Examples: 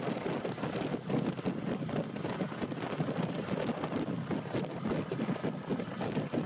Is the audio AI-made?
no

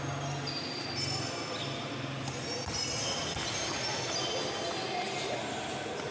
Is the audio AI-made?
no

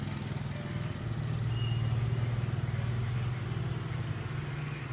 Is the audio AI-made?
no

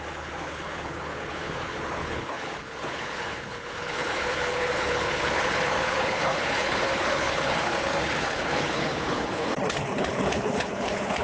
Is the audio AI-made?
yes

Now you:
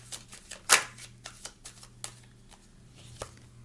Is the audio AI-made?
no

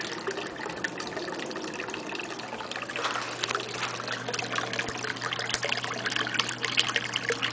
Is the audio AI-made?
no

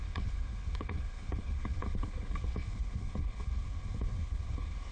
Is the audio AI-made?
yes